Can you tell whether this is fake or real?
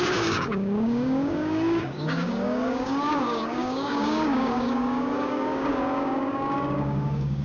fake